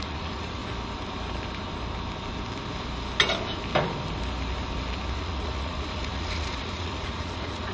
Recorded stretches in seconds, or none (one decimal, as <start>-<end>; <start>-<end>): 0.6-5.2